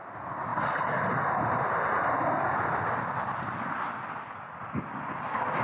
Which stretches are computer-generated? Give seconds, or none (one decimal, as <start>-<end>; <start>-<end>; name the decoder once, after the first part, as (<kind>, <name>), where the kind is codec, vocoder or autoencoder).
none